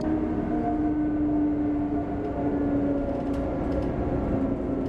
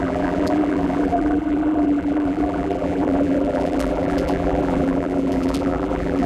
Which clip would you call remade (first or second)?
second